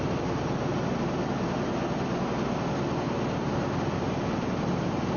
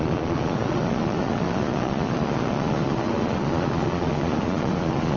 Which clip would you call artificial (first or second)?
second